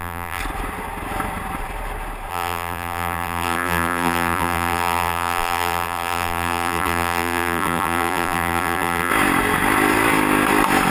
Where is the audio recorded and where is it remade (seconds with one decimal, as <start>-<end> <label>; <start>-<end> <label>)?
0.0-0.4 remade; 0.4-2.3 recorded; 2.3-9.1 remade; 9.1-10.9 recorded

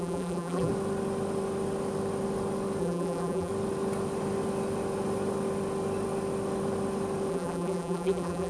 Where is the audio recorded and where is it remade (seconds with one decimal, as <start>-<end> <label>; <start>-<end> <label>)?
0.0-0.7 remade; 0.7-2.8 recorded; 2.8-3.5 remade; 3.5-7.3 recorded; 7.3-8.5 remade

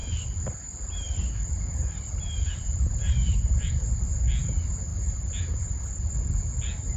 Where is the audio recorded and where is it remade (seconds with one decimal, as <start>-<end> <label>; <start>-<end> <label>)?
0.0-4.0 remade; 4.0-4.9 recorded; 4.9-6.1 remade; 6.1-7.0 recorded

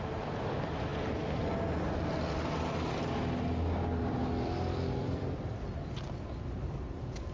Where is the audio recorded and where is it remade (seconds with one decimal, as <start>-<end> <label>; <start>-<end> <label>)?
0.0-0.9 remade; 0.9-4.0 recorded; 4.0-7.3 remade